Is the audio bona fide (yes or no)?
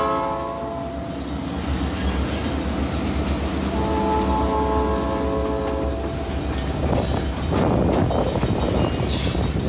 yes